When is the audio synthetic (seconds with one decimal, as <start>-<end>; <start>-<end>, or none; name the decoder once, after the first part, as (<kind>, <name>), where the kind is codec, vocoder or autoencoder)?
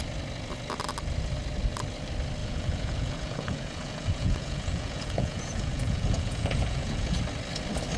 2.4-7.2 (vocoder, Vocos)